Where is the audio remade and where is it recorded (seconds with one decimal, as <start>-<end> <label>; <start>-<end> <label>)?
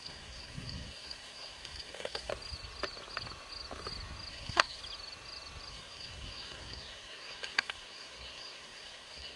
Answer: 0.0-2.3 remade; 2.3-4.3 recorded; 4.3-4.8 remade; 4.8-5.7 recorded; 5.7-9.4 remade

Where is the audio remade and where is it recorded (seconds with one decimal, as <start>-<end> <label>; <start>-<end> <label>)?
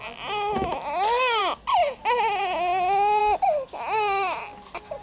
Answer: 0.0-5.0 recorded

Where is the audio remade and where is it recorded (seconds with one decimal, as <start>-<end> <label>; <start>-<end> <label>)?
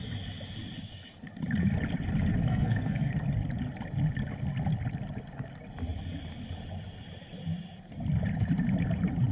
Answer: 0.0-2.5 recorded; 2.5-3.1 remade; 3.1-9.3 recorded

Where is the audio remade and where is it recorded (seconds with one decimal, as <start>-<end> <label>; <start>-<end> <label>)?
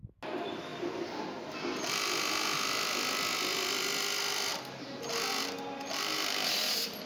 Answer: 0.0-7.1 recorded